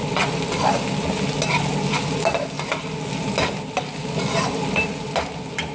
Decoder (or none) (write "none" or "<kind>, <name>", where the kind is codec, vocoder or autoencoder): none